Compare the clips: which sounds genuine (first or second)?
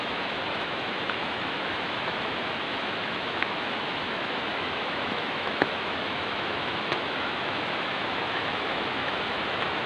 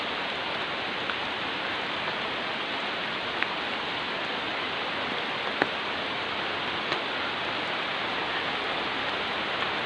second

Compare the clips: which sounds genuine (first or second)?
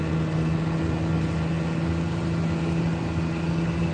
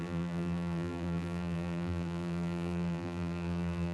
first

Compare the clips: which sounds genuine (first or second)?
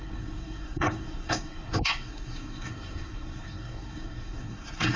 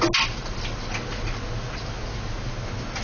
second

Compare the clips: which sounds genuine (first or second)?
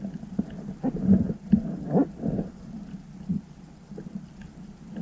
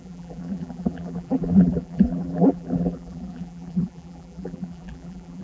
first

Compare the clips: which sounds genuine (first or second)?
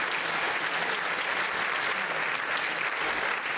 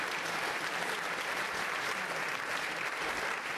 first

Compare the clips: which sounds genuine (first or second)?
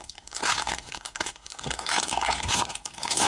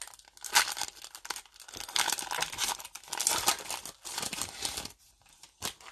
second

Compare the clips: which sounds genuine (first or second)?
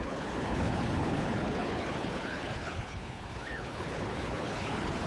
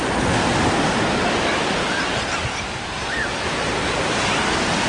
second